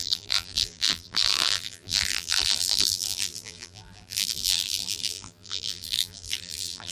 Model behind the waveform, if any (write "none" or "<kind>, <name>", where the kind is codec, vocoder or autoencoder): vocoder, BigVGAN v2